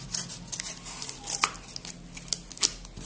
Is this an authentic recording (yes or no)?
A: yes